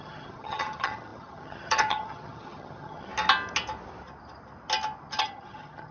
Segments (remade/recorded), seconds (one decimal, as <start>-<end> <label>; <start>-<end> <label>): 0.0-3.1 remade; 3.1-5.2 recorded; 5.2-5.9 remade